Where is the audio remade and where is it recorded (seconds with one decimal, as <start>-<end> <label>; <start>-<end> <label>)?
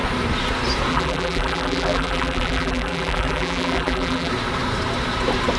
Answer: 0.0-0.9 recorded; 0.9-4.3 remade; 4.3-5.6 recorded